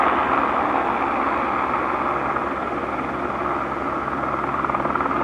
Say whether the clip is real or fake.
real